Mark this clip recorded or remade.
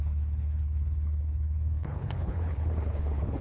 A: remade